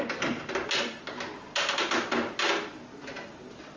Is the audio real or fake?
real